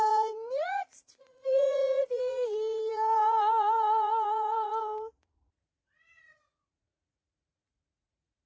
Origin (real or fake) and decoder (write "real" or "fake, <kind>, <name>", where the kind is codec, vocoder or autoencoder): fake, vocoder, Vocos